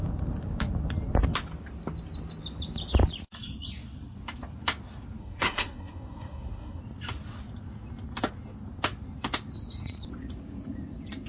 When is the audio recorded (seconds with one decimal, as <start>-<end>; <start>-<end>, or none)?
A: 0.0-5.2; 6.8-11.3